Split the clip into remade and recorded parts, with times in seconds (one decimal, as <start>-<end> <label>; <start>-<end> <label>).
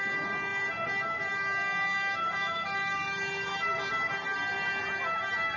0.0-5.6 recorded